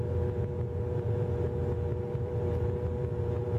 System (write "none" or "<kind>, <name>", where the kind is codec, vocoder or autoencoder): none